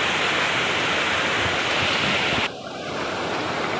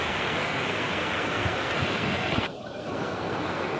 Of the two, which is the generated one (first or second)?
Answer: second